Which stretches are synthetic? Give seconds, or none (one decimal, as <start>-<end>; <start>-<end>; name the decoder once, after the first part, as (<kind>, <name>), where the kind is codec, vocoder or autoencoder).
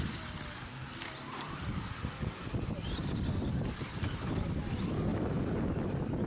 0.8-4.6 (vocoder, BigVGAN v2); 5.1-5.8